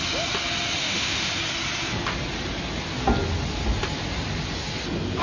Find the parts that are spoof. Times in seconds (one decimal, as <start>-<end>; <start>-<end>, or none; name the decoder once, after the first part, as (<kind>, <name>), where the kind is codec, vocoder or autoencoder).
0.8-1.3 (autoencoder, DAC-VAE)